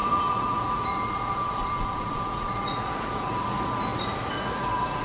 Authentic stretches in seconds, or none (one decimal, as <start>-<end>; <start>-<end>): none